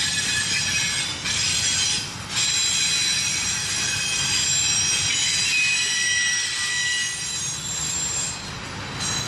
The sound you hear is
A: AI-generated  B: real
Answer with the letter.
B